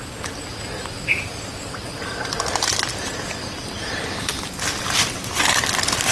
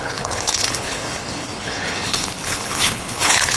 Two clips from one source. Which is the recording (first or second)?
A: first